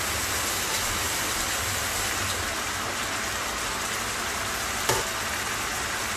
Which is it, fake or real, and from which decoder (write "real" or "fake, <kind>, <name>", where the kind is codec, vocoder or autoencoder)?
real